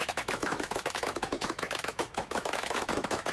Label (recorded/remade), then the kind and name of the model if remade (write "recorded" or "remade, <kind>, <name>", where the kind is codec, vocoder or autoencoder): remade, autoencoder, DAC-VAE